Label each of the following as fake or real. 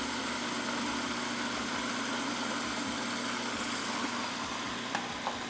real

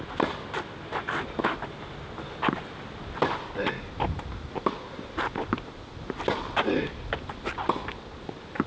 real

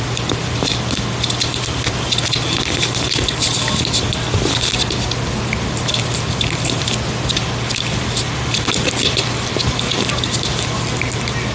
real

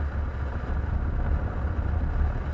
real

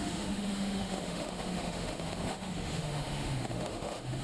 fake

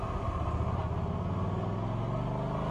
real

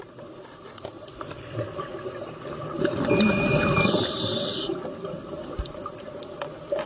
fake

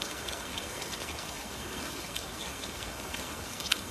fake